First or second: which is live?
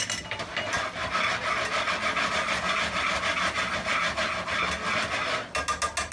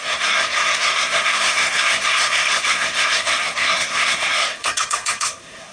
first